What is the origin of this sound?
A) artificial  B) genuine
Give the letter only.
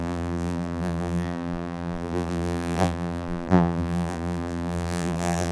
A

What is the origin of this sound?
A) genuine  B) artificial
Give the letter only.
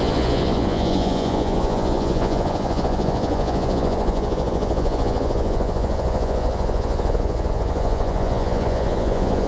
B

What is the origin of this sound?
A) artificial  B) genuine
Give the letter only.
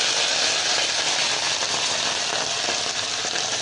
B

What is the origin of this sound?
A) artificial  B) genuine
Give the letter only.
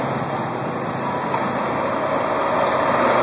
B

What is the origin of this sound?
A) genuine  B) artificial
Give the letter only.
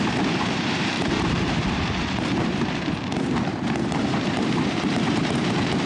B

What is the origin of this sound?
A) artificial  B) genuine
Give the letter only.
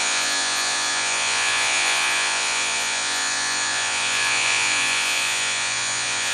A